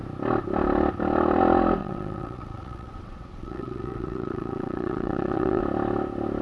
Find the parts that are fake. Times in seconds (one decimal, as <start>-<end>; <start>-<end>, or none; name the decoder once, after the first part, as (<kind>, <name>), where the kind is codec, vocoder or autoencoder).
1.8-5.6 (vocoder, WaveNeXt)